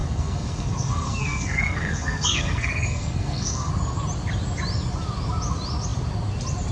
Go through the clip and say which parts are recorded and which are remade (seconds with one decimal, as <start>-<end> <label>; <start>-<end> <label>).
0.0-3.7 remade; 3.7-6.7 recorded